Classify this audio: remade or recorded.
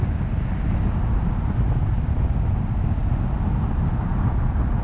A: recorded